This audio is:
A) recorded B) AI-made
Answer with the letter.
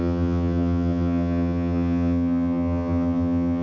B